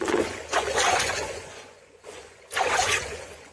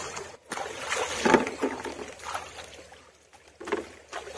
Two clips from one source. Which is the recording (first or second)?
second